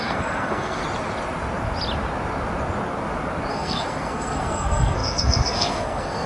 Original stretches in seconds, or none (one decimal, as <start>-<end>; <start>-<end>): 0.8-3.5